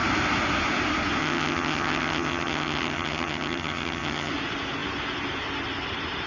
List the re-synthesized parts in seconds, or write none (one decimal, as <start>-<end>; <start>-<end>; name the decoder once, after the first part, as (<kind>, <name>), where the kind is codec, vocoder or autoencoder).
1.2-4.3 (vocoder, HiFi-GAN)